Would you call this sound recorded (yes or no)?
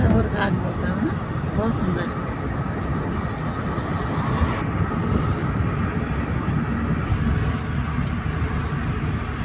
yes